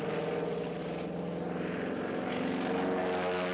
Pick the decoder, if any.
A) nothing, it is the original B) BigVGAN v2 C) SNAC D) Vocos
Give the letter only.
A